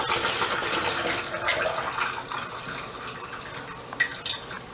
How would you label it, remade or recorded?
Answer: recorded